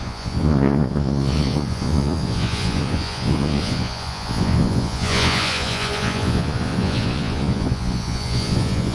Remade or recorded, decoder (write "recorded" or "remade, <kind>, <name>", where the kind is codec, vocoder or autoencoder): remade, vocoder, Vocos